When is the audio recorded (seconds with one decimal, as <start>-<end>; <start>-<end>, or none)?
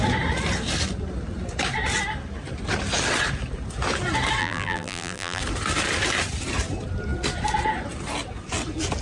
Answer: 0.0-4.4; 5.4-9.0